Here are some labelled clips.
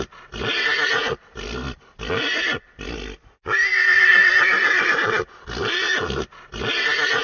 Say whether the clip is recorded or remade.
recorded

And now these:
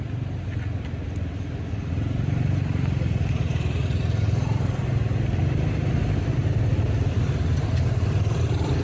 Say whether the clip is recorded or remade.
recorded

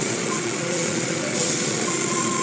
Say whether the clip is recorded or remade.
remade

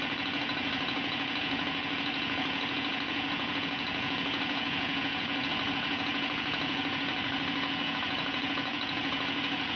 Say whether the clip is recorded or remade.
remade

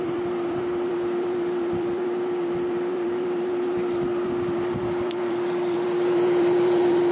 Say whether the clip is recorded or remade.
remade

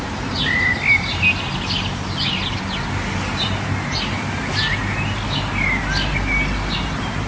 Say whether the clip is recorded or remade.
recorded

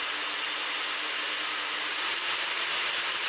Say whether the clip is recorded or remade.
recorded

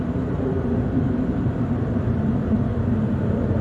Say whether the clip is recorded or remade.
recorded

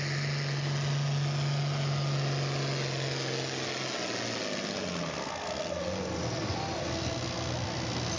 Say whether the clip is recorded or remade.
recorded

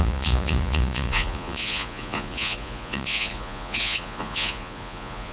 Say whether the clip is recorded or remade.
remade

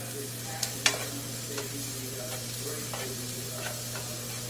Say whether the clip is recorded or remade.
recorded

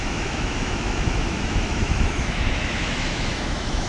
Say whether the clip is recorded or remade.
remade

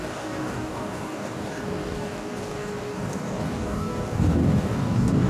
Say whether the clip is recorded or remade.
remade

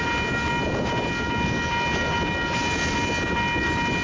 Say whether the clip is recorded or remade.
recorded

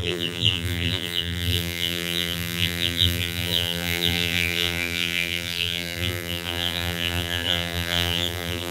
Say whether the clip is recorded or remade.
remade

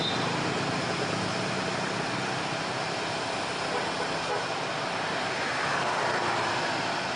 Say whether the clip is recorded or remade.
recorded